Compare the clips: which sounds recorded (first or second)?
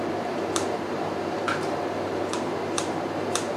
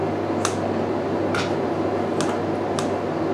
second